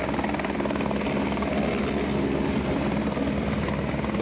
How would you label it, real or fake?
real